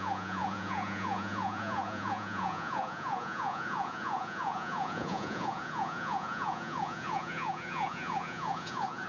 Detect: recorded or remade remade